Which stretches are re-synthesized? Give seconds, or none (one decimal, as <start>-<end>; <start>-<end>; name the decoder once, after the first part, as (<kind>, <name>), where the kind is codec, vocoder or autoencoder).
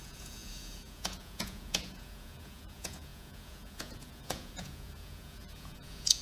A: 0.0-6.2 (vocoder, Vocos)